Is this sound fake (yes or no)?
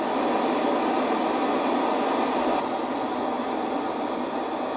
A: no